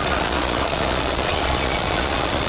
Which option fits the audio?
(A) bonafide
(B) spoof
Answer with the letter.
B